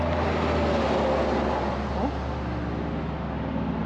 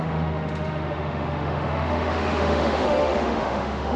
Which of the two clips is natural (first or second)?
first